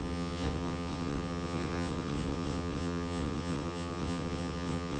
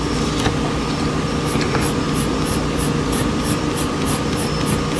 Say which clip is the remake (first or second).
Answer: first